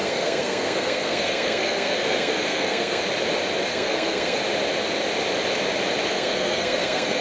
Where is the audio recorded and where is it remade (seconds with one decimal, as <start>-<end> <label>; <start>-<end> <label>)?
0.0-3.0 remade; 3.0-3.7 recorded; 3.7-4.4 remade; 4.4-6.1 recorded; 6.1-7.2 remade